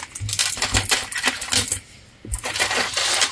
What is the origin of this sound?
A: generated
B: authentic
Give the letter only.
B